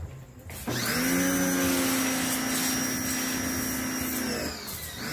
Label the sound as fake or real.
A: real